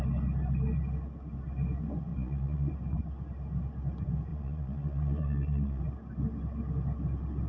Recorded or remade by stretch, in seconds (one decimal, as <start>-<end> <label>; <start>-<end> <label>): 0.0-2.1 recorded; 2.1-2.7 remade; 2.7-4.3 recorded; 4.3-5.8 remade; 5.8-7.5 recorded